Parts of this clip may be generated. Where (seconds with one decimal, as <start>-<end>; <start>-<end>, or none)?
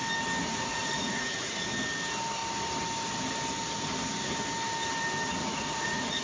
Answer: 0.4-1.5; 5.4-6.2